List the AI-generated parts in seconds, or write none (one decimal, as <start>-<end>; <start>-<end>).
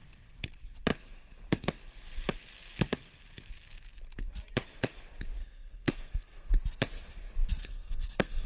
5.4-6.5; 7.6-8.5